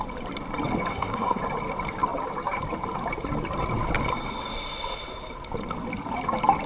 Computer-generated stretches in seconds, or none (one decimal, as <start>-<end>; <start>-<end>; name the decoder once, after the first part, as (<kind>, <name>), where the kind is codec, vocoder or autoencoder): 0.9-1.4 (codec, SNAC)